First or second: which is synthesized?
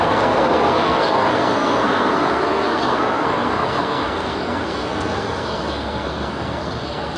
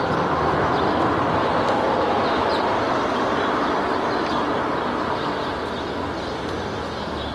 first